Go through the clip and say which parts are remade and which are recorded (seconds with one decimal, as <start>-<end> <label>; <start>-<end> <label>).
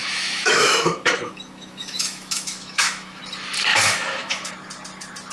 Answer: 0.0-3.2 remade; 3.2-3.7 recorded; 3.7-4.5 remade; 4.5-5.3 recorded